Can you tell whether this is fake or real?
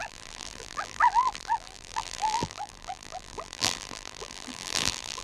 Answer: fake